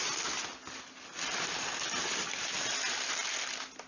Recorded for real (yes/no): yes